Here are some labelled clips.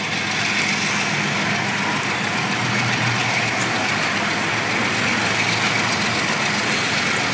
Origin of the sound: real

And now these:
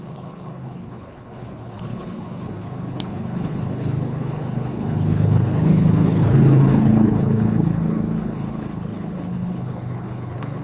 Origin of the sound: fake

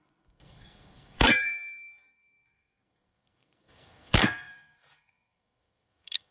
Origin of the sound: fake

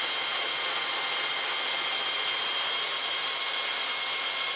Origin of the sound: real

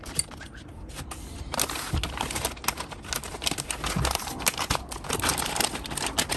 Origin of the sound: real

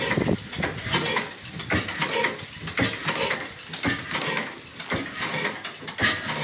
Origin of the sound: real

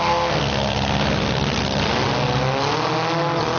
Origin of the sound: real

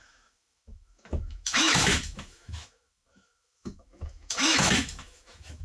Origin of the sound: fake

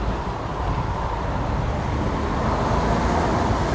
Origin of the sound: real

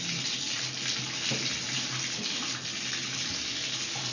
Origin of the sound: real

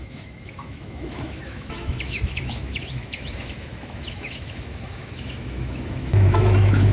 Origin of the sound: fake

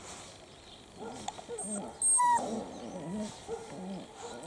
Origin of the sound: real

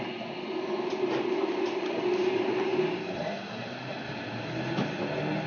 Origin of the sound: real